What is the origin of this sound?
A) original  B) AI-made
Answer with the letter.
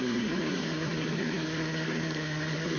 B